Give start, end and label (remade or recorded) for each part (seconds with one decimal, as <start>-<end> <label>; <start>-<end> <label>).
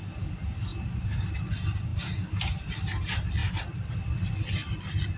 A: 0.0-0.7 recorded; 0.7-1.5 remade; 1.5-5.2 recorded